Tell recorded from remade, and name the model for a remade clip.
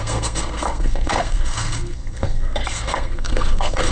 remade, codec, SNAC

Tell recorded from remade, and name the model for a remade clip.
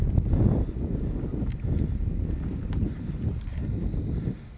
recorded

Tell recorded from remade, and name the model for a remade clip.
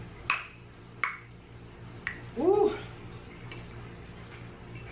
recorded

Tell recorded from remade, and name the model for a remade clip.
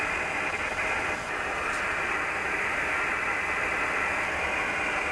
recorded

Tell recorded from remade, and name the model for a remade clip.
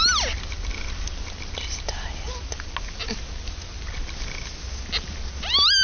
recorded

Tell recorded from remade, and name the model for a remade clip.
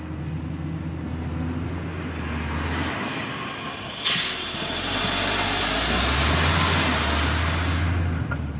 recorded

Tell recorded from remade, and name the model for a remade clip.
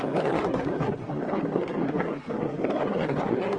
remade, codec, SNAC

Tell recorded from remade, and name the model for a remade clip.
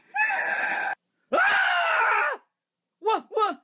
recorded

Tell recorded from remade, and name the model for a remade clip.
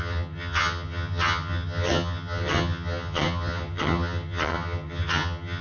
remade, vocoder, HiFi-GAN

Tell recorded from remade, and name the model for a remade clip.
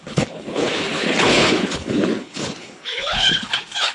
remade, codec, HILCodec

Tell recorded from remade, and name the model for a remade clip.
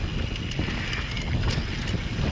recorded